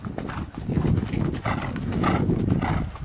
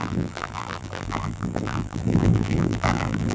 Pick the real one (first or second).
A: first